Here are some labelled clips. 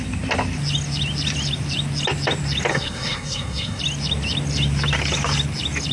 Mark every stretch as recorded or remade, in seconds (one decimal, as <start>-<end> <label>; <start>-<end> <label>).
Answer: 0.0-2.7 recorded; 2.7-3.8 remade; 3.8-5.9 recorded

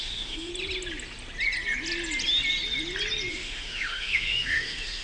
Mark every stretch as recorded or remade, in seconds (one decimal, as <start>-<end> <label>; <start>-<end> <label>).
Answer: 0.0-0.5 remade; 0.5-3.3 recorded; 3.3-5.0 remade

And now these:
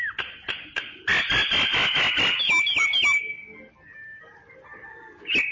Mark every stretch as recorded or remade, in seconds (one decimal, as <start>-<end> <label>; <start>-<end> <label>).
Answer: 0.0-5.5 recorded